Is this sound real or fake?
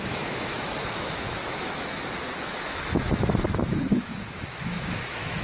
fake